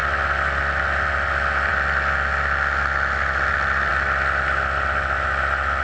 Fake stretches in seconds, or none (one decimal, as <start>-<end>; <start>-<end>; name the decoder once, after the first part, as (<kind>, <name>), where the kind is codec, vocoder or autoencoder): none